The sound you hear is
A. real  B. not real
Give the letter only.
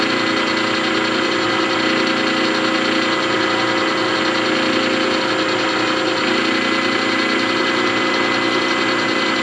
A